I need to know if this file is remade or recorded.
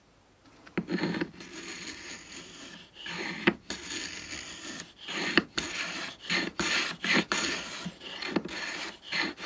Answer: recorded